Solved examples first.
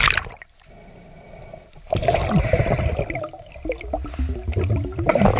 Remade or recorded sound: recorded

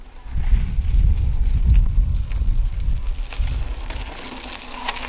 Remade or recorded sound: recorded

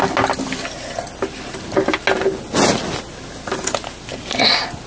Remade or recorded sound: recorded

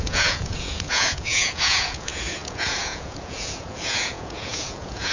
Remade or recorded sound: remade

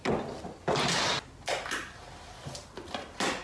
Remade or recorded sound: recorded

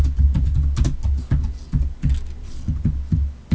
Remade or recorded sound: recorded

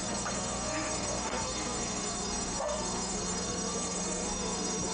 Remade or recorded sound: remade